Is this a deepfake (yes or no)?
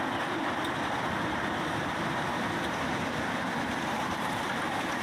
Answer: yes